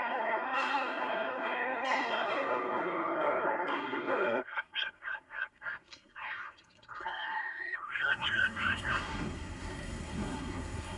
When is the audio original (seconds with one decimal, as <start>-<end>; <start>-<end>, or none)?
none